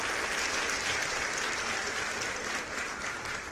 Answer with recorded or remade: recorded